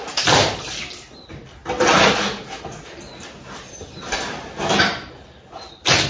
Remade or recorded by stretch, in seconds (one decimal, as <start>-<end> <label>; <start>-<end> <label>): 0.0-6.1 recorded